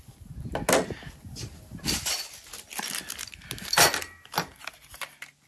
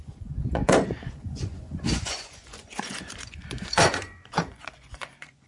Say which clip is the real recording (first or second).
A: first